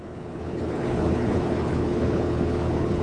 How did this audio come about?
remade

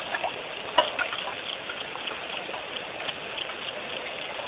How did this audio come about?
recorded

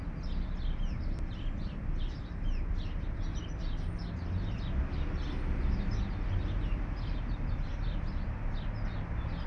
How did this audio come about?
recorded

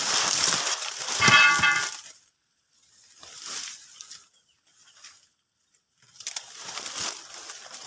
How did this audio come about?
recorded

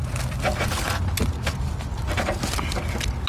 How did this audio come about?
recorded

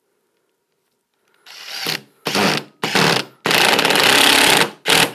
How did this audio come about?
recorded